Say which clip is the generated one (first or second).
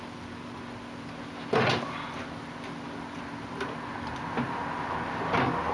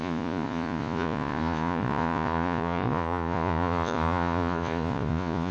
second